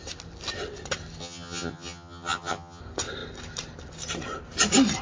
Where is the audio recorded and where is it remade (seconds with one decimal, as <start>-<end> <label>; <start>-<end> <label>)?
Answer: 0.0-1.2 recorded; 1.2-2.8 remade; 2.8-5.0 recorded